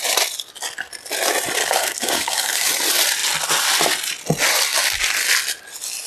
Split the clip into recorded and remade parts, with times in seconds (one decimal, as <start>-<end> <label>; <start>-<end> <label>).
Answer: 0.0-1.6 recorded; 1.6-2.7 remade; 2.7-6.1 recorded